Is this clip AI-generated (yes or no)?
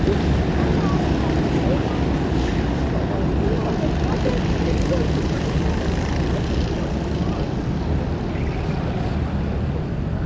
no